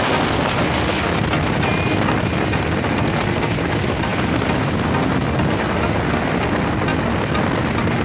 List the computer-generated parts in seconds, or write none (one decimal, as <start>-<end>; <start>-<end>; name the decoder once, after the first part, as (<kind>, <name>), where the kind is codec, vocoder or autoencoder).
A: none